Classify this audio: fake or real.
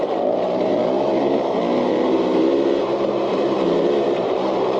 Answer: fake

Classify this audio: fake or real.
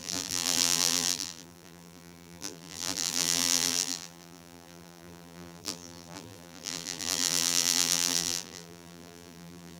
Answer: fake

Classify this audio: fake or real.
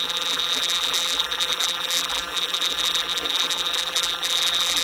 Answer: fake